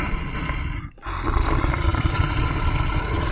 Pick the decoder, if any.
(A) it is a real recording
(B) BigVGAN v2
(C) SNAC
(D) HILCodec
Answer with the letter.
A